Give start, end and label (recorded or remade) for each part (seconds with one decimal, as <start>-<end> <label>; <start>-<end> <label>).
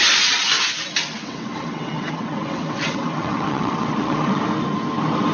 0.0-1.2 recorded; 1.2-4.4 remade; 4.4-5.3 recorded